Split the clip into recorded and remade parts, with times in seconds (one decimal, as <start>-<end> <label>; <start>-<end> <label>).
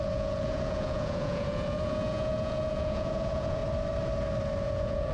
0.0-3.6 remade; 3.6-4.6 recorded; 4.6-5.1 remade